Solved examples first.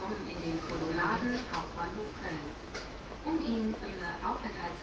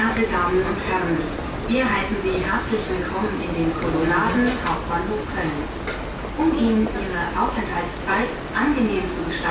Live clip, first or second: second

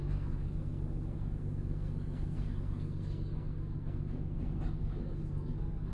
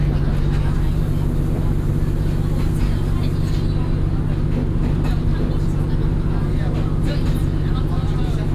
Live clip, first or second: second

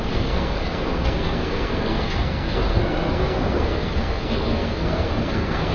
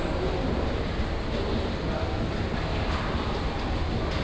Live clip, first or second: second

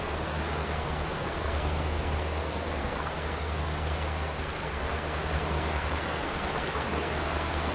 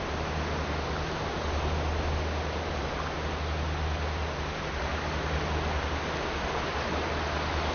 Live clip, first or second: second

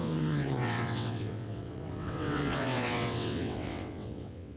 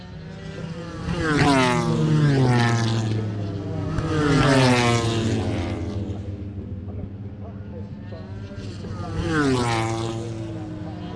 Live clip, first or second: second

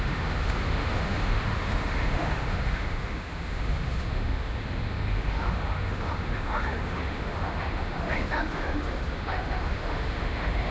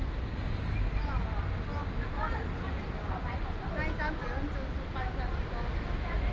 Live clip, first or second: second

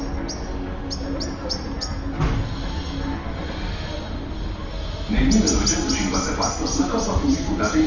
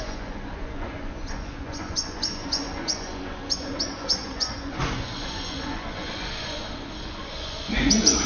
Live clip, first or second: first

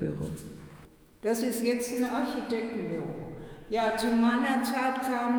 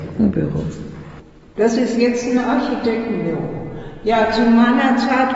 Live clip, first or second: second